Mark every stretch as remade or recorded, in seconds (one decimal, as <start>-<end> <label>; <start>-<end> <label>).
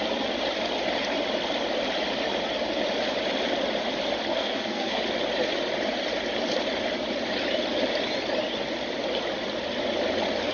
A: 0.0-4.3 recorded; 4.3-5.0 remade; 5.0-10.5 recorded